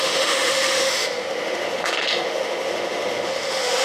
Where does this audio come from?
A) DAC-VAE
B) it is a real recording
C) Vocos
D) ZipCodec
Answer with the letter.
A